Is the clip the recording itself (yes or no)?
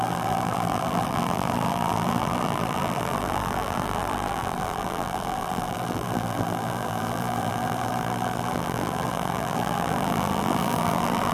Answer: no